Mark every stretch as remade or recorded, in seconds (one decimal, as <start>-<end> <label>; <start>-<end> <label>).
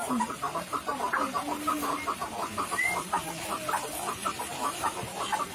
0.0-1.7 remade; 1.7-5.0 recorded; 5.0-5.5 remade